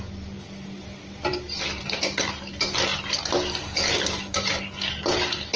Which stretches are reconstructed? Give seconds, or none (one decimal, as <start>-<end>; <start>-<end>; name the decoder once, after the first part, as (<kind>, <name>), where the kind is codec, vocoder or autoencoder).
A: none